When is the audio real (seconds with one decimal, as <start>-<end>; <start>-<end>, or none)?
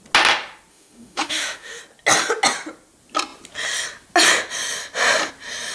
0.0-0.7; 1.8-5.7